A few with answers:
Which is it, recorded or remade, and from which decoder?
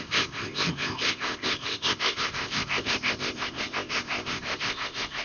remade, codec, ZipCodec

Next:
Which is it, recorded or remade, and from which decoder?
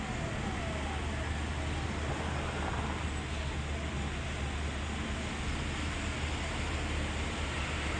recorded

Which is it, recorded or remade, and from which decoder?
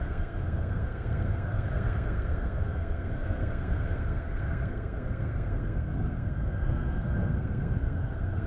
remade, codec, SNAC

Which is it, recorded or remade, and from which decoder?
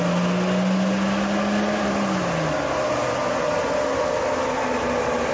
recorded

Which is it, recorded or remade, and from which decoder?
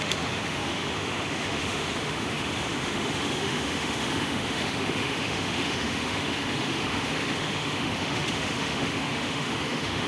remade, autoencoder, DAC-VAE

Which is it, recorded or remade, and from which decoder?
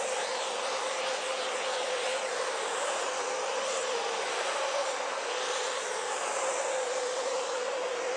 recorded